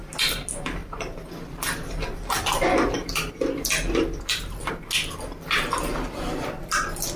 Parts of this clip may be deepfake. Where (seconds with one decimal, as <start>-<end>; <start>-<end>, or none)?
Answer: 0.8-4.7